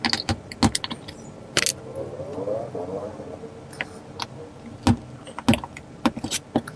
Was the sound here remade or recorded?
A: recorded